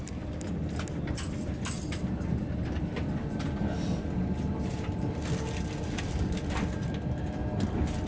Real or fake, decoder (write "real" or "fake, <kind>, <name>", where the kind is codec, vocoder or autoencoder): real